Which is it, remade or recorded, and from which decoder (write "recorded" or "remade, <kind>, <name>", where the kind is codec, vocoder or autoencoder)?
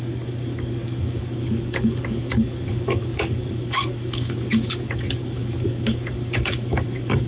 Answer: remade, codec, DAC